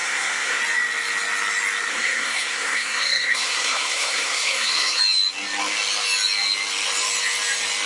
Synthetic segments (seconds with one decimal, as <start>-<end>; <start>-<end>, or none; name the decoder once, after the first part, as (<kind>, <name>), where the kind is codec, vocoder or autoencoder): 0.0-0.6 (codec, SNAC); 1.9-5.0